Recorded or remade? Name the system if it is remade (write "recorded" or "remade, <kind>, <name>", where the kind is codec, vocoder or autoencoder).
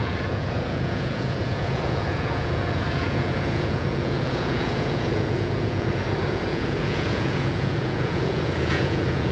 remade, vocoder, Vocos